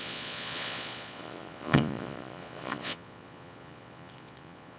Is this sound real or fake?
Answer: fake